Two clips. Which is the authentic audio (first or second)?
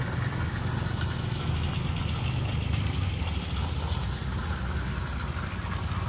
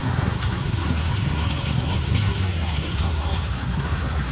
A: first